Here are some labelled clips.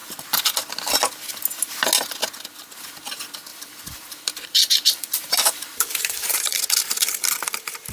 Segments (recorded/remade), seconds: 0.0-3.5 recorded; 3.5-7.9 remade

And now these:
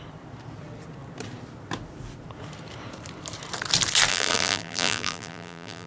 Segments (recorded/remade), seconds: 0.0-4.1 recorded; 4.1-5.9 remade

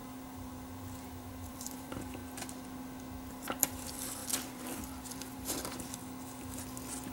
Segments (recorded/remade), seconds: 0.0-0.8 recorded; 0.8-2.2 remade; 2.2-3.3 recorded; 3.3-6.0 remade; 6.0-7.1 recorded